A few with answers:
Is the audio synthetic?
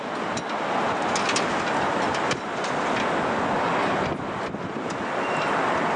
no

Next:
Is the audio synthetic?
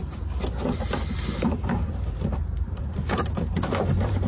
yes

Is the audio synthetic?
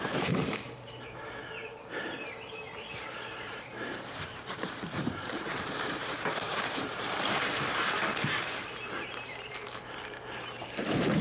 yes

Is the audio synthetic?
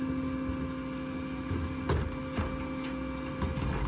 no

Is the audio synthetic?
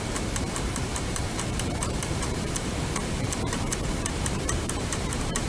yes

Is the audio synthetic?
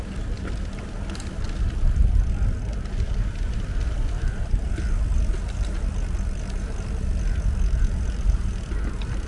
no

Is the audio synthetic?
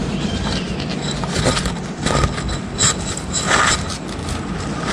no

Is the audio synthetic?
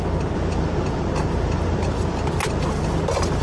no